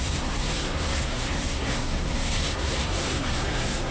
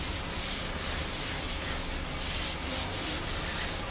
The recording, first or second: second